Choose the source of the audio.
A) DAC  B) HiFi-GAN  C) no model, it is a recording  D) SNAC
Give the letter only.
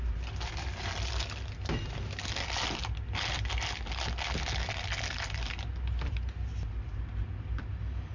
C